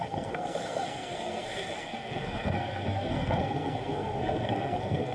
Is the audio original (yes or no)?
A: no